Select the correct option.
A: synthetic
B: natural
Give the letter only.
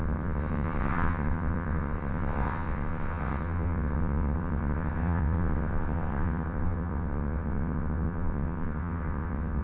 A